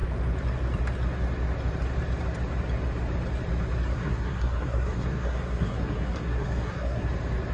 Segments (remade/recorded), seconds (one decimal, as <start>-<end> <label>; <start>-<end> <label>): 0.0-3.9 recorded; 3.9-7.1 remade; 7.1-7.5 recorded